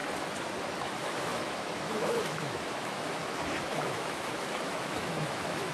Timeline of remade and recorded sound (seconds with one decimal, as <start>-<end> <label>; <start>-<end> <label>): 0.0-0.8 recorded; 0.8-5.7 remade